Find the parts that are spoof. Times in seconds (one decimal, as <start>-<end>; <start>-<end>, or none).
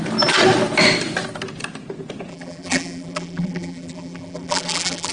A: 2.3-5.1